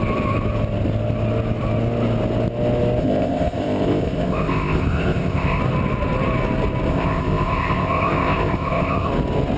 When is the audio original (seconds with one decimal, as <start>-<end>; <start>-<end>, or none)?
0.0-3.0; 5.6-6.9; 9.1-9.6